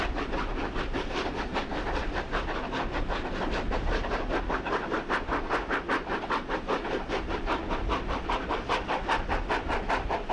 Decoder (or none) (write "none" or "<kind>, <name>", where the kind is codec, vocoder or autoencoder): none